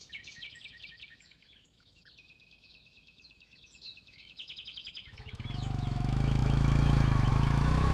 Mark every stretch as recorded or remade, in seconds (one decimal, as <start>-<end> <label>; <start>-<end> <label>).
0.0-7.9 remade